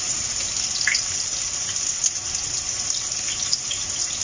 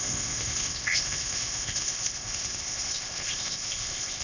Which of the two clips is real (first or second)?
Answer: first